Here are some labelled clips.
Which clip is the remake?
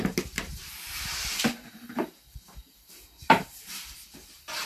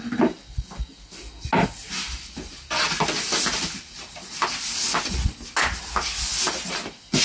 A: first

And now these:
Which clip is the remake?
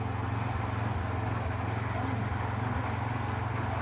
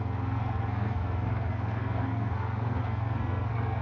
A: second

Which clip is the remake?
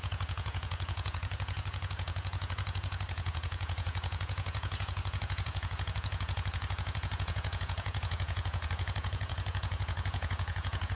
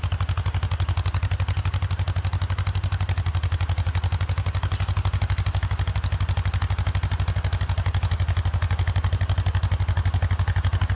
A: first